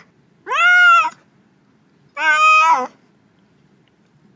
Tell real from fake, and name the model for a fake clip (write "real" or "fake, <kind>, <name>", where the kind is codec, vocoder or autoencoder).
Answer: real